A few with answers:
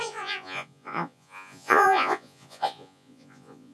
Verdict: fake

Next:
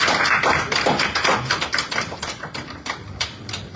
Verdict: fake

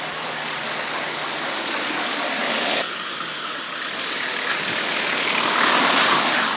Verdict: fake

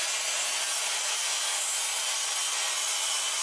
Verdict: real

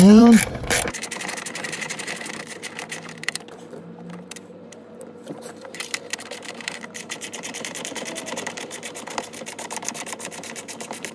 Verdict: fake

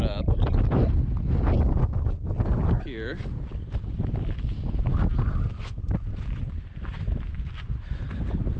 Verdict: real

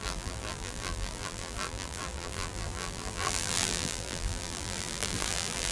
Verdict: fake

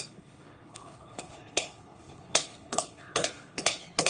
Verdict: fake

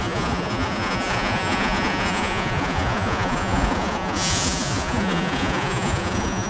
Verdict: fake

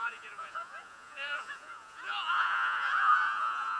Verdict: fake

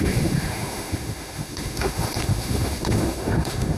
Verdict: fake